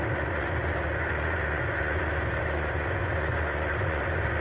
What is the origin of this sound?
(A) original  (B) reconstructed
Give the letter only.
B